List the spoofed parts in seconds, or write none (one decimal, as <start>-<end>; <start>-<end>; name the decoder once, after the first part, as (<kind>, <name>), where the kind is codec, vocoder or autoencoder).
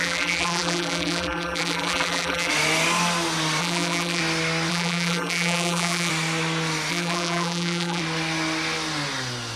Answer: 0.0-2.5 (vocoder, BigVGAN v2); 3.6-4.2; 4.7-6.1; 6.9-8.0